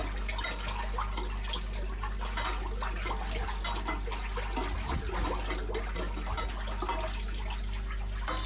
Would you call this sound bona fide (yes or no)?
yes